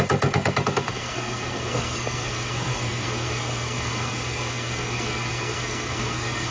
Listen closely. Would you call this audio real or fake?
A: fake